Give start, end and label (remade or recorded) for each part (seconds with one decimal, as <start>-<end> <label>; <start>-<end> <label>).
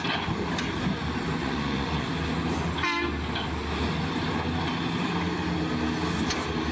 0.0-1.4 recorded; 1.4-2.1 remade; 2.1-6.7 recorded